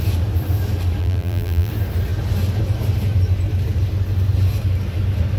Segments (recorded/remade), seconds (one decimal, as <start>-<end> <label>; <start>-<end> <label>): 0.0-1.0 recorded; 1.0-1.7 remade; 1.7-5.4 recorded